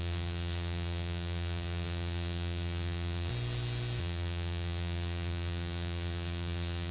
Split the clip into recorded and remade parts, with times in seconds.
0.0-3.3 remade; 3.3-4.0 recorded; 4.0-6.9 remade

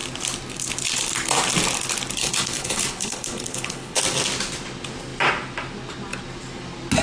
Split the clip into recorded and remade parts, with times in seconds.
0.0-2.2 recorded; 2.2-4.0 remade; 4.0-7.0 recorded

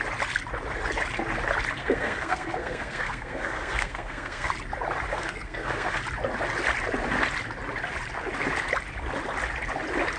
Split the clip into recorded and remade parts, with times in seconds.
0.0-1.8 recorded; 1.8-4.5 remade; 4.5-5.1 recorded; 5.1-6.0 remade; 6.0-10.2 recorded

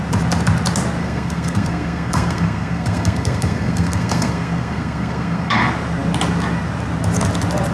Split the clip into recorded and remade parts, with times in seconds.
0.0-1.0 recorded; 1.0-5.6 remade; 5.6-7.7 recorded

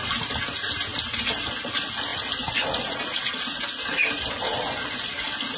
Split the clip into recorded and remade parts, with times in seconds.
0.0-5.6 recorded

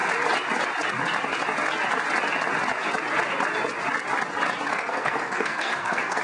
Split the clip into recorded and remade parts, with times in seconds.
0.0-4.7 recorded; 4.7-6.2 remade